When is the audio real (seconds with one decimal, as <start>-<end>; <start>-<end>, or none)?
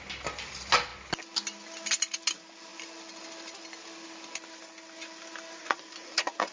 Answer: 0.0-5.6